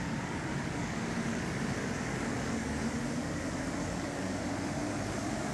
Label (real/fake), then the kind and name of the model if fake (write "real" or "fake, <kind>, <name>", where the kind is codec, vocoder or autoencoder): fake, codec, DAC